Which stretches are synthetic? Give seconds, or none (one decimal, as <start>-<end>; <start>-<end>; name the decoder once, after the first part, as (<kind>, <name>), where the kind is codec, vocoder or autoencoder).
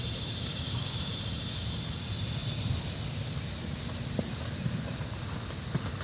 0.5-1.1 (codec, DAC)